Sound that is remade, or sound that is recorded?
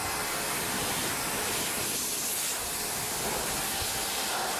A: recorded